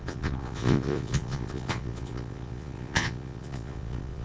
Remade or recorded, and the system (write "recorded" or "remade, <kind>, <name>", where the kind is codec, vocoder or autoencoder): remade, vocoder, Vocos